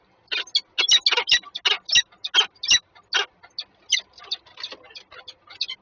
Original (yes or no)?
yes